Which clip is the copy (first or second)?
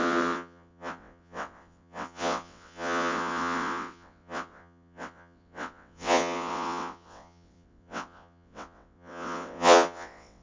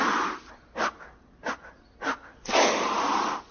first